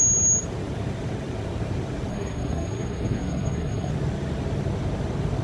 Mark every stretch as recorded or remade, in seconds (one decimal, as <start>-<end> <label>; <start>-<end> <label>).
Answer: 0.0-2.1 recorded; 2.1-3.9 remade; 3.9-5.4 recorded